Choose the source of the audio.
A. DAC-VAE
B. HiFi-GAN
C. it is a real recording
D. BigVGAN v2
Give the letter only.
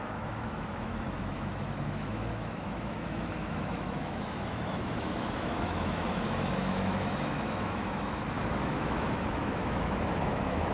A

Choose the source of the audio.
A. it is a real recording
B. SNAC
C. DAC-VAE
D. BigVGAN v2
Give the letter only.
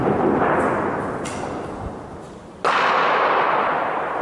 A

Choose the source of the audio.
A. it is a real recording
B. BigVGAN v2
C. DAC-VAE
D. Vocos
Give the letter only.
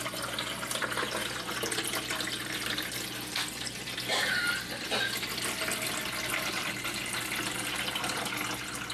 A